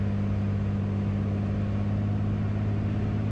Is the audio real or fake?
real